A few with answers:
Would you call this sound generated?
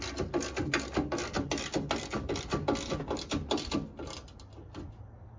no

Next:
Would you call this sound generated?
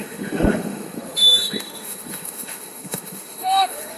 yes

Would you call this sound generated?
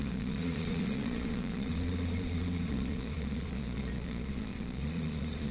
yes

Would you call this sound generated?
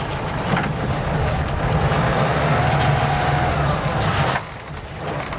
no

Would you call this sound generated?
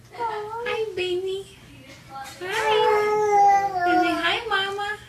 no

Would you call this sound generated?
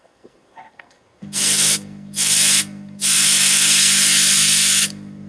yes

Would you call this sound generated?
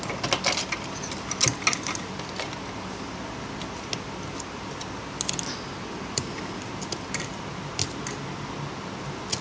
no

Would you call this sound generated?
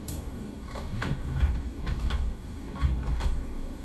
yes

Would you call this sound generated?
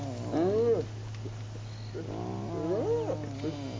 no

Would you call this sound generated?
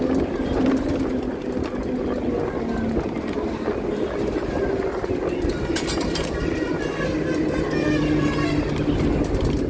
no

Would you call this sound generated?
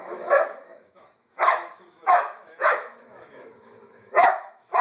yes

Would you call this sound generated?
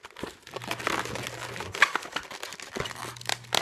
no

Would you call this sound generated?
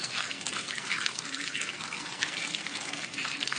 yes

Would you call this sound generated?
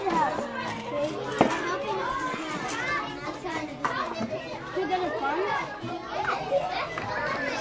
no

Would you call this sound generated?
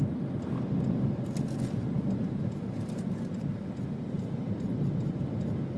no